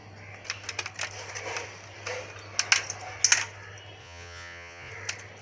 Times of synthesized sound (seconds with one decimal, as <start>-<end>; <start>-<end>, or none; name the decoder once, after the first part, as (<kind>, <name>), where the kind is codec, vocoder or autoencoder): 4.0-4.9 (vocoder, Vocos)